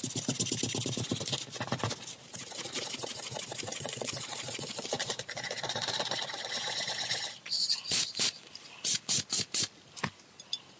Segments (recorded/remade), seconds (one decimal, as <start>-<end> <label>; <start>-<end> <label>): 0.0-3.7 recorded; 3.7-8.4 remade; 8.4-10.8 recorded